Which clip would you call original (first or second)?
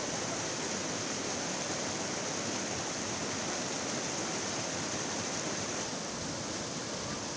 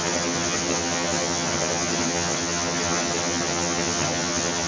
first